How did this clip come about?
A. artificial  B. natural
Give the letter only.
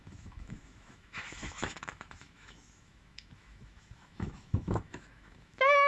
A